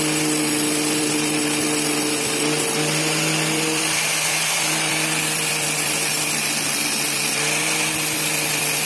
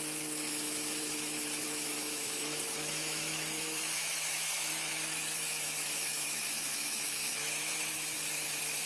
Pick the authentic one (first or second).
first